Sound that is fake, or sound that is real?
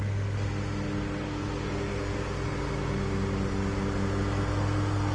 real